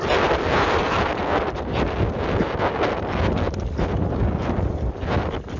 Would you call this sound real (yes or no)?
yes